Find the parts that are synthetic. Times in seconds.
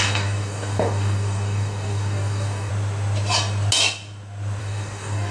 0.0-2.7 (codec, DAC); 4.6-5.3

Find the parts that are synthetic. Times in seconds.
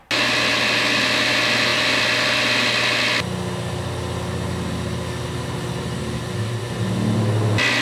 none